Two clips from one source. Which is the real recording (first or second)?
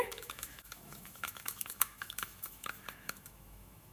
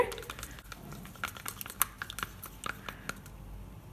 second